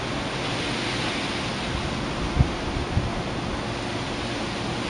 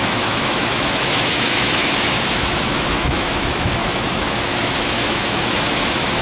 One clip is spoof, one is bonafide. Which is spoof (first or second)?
second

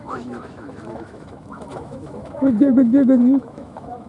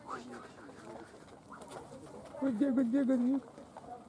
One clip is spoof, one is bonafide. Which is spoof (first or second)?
first